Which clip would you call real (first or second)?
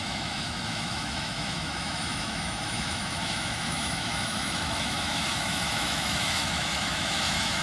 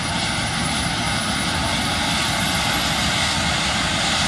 second